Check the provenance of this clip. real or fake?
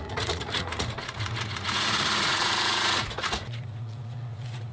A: fake